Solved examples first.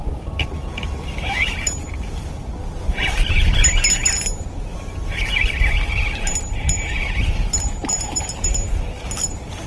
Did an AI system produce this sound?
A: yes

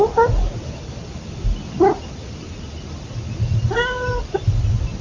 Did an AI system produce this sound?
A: no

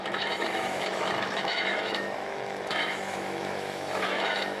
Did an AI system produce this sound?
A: yes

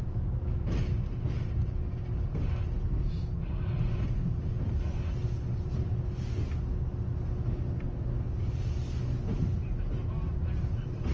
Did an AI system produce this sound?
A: no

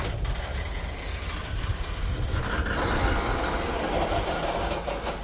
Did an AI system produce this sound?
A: no